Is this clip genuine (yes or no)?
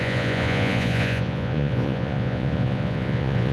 no